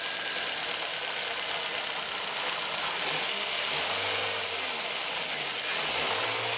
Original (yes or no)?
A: yes